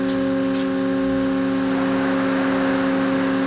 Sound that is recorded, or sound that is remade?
recorded